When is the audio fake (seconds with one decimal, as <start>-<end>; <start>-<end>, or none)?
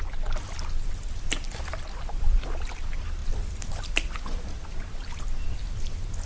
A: none